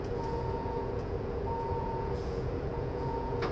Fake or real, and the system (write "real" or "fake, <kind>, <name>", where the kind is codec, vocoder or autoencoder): fake, vocoder, Vocos